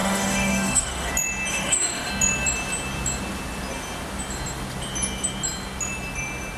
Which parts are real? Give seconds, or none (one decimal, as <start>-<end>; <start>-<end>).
1.1-1.5; 2.1-6.6